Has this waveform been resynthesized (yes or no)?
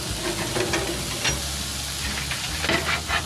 no